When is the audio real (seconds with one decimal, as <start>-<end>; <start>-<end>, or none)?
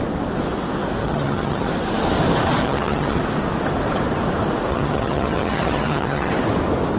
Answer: 0.0-1.0; 1.7-2.6; 3.2-4.7; 6.3-7.0